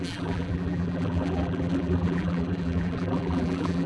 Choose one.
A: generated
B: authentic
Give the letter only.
A